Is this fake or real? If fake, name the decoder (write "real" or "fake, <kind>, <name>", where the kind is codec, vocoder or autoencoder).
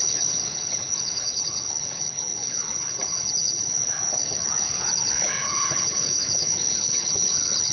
fake, codec, HILCodec